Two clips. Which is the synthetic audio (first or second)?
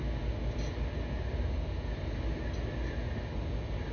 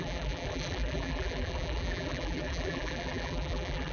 second